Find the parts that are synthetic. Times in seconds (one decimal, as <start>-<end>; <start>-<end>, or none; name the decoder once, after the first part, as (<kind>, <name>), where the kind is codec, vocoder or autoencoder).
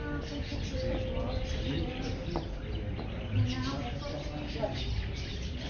none